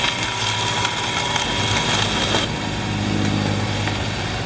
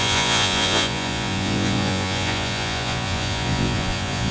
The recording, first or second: first